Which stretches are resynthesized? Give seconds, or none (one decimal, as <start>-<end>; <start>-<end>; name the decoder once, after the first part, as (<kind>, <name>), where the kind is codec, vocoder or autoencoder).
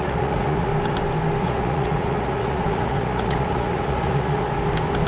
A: 0.0-0.7 (vocoder, Vocos); 1.4-4.5